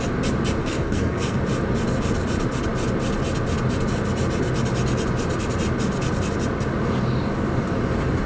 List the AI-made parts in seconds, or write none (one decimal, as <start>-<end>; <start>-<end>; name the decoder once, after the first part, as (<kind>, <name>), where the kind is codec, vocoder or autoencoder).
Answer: 0.6-1.4 (codec, SNAC)